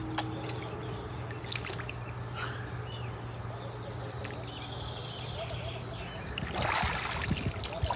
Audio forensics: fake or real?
real